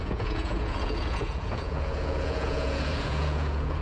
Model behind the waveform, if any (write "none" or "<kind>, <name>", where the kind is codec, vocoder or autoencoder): vocoder, Vocos